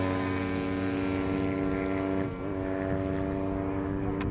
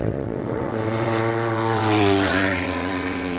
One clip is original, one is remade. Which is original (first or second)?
first